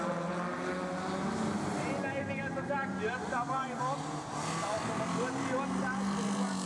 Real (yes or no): yes